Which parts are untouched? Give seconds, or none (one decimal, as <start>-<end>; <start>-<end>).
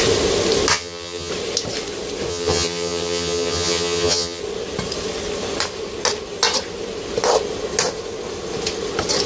0.0-0.7; 1.3-2.3; 4.4-9.3